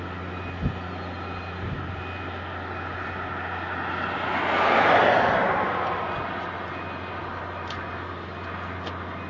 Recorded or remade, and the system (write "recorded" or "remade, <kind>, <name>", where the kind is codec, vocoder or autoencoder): recorded